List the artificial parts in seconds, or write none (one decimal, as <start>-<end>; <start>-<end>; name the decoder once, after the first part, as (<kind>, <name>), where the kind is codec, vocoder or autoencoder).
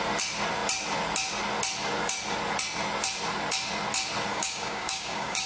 4.3-5.5 (codec, DAC)